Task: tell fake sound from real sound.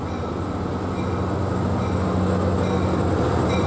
real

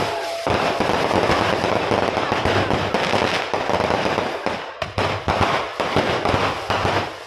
real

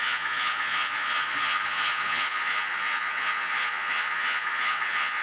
fake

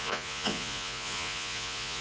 fake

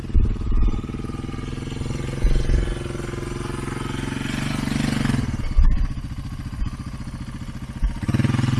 real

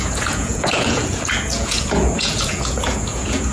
fake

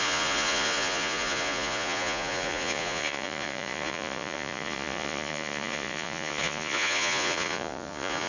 fake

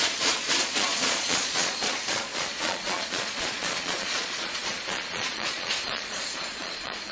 fake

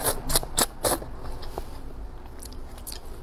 real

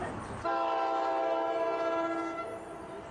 real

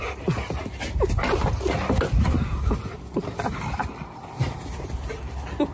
real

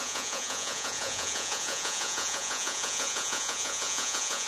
fake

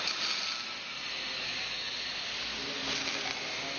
real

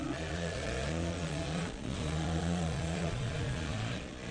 fake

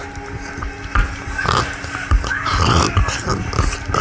real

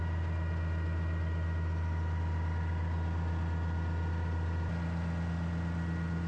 real